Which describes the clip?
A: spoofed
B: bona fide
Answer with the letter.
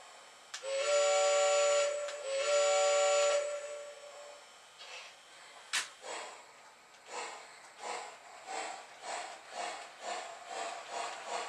B